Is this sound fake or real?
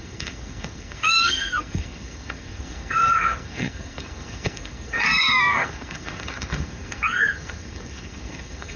fake